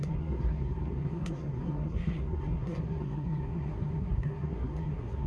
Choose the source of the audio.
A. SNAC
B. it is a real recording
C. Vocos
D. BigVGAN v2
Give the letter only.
A